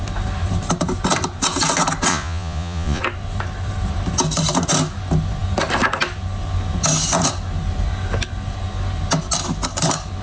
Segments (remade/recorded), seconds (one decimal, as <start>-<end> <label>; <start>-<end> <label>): 0.0-2.1 recorded; 2.1-3.0 remade; 3.0-10.2 recorded